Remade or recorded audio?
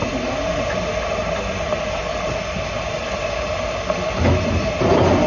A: recorded